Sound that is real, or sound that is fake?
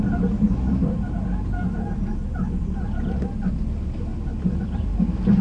real